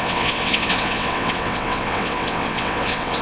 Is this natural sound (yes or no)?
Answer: no